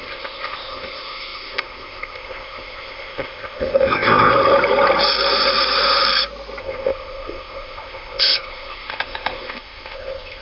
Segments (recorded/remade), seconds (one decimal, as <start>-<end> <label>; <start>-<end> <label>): 0.0-4.3 remade; 4.3-6.6 recorded; 6.6-10.4 remade